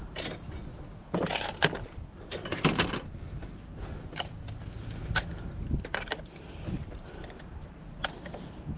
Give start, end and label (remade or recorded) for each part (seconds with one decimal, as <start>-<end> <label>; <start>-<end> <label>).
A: 0.0-0.7 recorded; 0.7-4.4 remade; 4.4-8.8 recorded